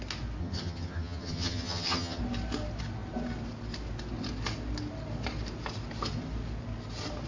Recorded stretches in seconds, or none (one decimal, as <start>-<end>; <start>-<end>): 0.0-0.4; 2.2-7.3